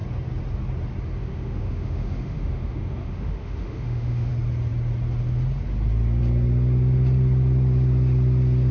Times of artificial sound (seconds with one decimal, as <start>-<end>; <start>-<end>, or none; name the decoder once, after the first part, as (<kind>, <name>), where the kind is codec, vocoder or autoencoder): 1.2-4.3 (autoencoder, DAC-VAE)